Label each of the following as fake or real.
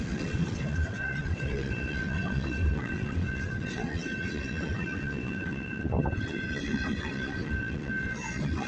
fake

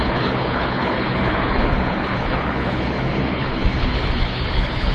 fake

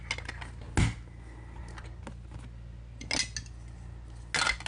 real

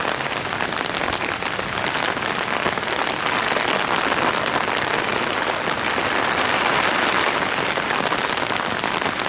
real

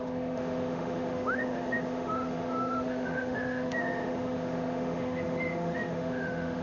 fake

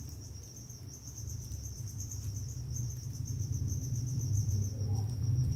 fake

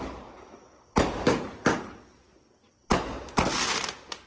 real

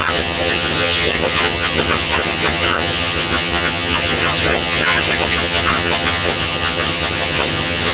fake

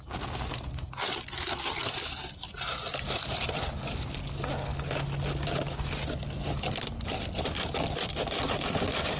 real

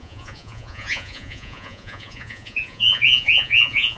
fake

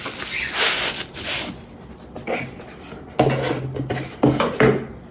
real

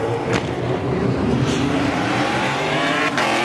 fake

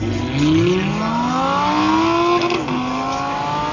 real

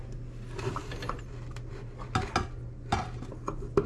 real